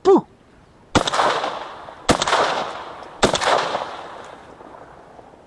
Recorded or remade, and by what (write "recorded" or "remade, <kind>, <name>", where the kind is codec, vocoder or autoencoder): recorded